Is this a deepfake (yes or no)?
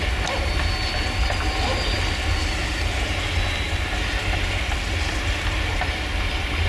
no